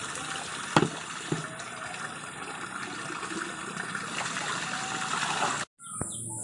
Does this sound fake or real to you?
real